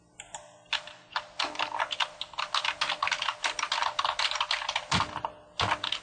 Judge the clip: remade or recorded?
recorded